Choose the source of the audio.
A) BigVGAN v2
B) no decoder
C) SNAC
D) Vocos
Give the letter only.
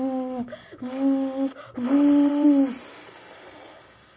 B